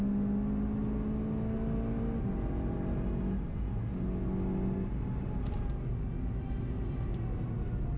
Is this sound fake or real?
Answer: real